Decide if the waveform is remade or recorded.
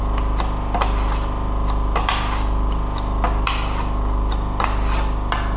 recorded